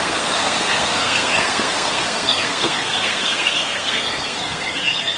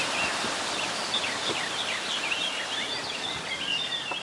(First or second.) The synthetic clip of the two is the first